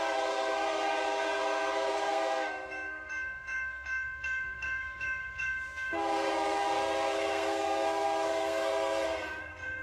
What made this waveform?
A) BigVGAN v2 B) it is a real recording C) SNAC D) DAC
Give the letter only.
C